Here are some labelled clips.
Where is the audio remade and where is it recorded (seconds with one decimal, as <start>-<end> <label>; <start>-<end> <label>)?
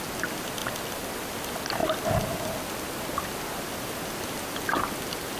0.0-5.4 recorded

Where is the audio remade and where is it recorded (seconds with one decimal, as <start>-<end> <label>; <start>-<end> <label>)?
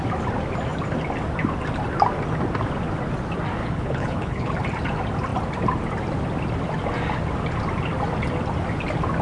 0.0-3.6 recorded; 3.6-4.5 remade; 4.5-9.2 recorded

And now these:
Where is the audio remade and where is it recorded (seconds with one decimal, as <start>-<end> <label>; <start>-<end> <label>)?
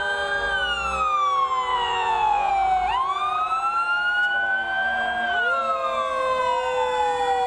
0.0-1.7 recorded; 1.7-2.5 remade; 2.5-7.5 recorded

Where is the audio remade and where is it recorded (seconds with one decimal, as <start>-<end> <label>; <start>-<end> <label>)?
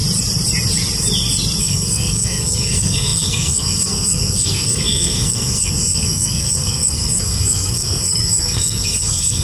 0.0-1.6 recorded; 1.6-9.4 remade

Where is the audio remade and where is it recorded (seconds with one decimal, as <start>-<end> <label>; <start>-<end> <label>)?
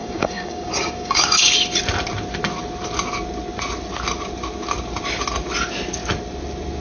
0.0-1.8 remade; 1.8-6.8 recorded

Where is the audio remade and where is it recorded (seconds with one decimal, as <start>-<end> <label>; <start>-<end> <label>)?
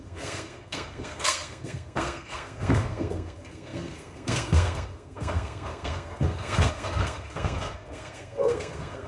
0.0-9.1 remade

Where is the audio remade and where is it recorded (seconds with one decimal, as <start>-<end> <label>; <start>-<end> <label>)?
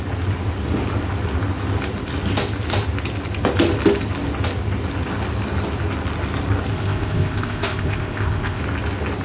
0.0-6.7 recorded; 6.7-8.6 remade; 8.6-9.2 recorded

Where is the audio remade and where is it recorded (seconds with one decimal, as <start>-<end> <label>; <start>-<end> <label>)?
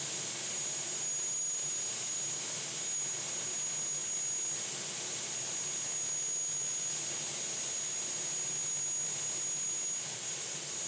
0.0-10.9 recorded